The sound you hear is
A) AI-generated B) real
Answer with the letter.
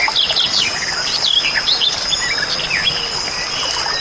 B